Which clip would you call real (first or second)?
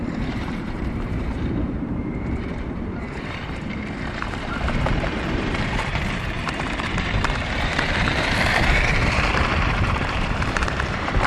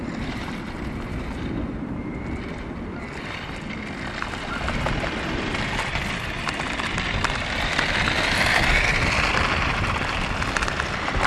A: second